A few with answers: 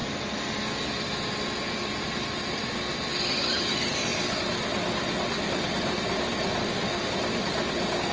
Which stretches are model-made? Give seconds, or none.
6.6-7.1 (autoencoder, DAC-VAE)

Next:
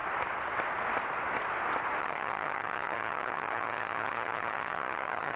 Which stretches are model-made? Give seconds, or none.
2.0-5.4 (vocoder, HiFi-GAN)

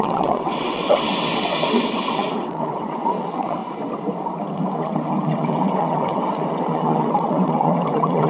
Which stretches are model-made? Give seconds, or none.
0.0-3.6 (vocoder, WaveNeXt); 4.5-8.3

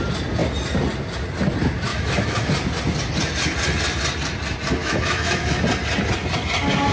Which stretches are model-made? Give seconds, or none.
1.9-2.5 (autoencoder, DAC-VAE); 4.8-5.6

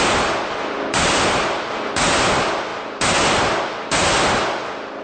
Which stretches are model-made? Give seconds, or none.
none

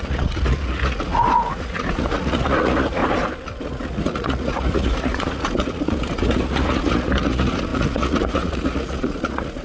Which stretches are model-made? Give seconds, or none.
0.0-3.0 (vocoder, Vocos); 3.6-9.6

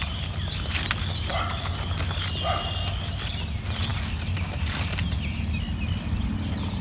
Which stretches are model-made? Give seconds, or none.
none

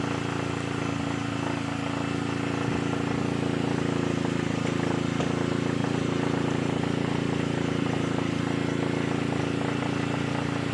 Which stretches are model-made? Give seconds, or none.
5.8-8.4 (vocoder, BigVGAN v2); 9.4-10.7